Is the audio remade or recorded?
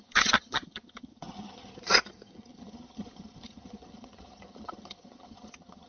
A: remade